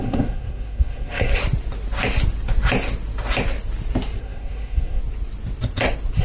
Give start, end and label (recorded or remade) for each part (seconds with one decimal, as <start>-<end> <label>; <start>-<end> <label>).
0.0-1.4 remade; 1.4-4.2 recorded; 4.2-5.0 remade; 5.0-6.2 recorded